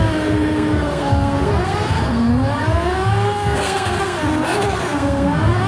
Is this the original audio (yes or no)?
no